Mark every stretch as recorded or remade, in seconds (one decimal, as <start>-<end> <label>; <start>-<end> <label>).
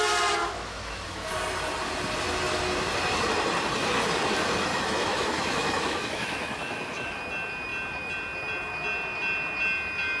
0.0-0.4 recorded; 0.4-1.3 remade; 1.3-4.7 recorded; 4.7-7.2 remade; 7.2-10.2 recorded